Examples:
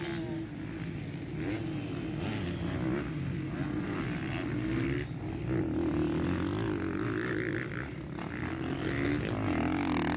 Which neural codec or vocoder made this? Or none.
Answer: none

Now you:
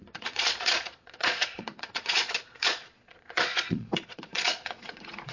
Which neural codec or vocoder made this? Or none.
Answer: vocoder, Vocos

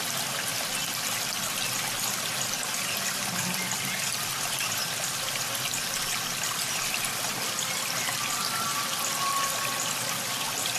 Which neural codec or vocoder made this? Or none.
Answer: none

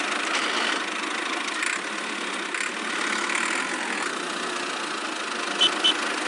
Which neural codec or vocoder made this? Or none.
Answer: none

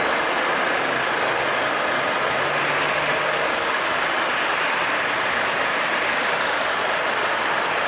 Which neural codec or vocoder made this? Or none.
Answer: none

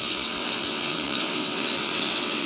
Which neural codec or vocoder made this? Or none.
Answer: vocoder, WaveNeXt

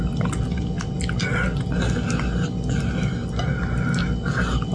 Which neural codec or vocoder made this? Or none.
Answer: none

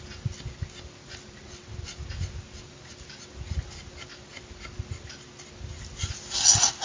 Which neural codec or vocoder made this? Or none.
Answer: none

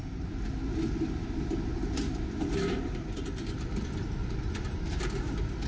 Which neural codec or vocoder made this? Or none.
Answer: none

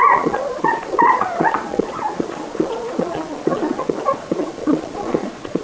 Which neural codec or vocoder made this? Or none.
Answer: vocoder, Vocos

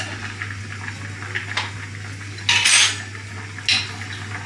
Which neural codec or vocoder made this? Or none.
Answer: none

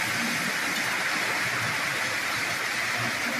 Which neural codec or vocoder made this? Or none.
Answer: none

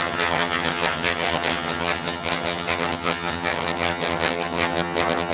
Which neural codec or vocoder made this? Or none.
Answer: vocoder, HiFi-GAN